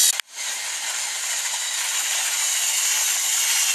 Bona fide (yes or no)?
yes